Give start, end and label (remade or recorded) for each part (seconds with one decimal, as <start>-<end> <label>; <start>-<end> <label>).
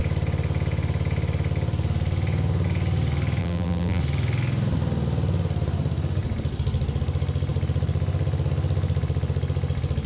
0.0-3.4 recorded; 3.4-4.0 remade; 4.0-10.1 recorded